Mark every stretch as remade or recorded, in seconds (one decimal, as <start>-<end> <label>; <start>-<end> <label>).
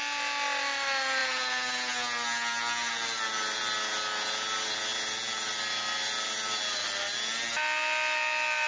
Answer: 0.0-8.7 recorded